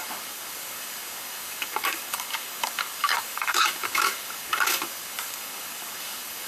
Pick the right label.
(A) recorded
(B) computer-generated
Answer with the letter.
B